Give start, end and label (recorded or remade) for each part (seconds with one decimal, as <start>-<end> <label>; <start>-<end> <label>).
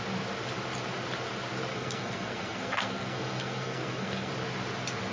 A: 0.0-1.7 recorded; 1.7-4.3 remade; 4.3-5.1 recorded